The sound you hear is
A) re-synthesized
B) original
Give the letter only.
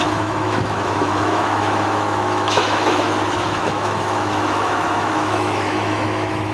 A